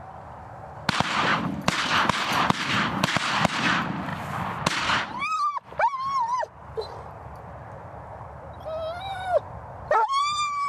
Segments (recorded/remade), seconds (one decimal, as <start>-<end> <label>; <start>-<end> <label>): 0.0-4.1 remade; 4.1-7.2 recorded; 7.2-10.7 remade